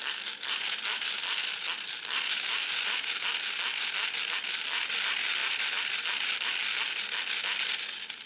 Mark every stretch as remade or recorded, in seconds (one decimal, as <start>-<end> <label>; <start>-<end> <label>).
0.0-8.3 recorded